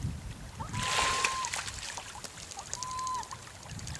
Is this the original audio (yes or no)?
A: yes